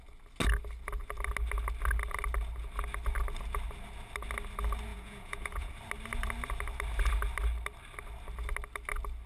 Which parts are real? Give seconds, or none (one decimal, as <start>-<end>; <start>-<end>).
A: 0.0-4.9; 5.7-9.3